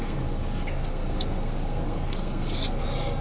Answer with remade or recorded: remade